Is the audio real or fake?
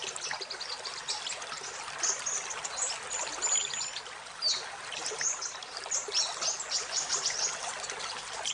real